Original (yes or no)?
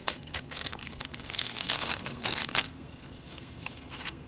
no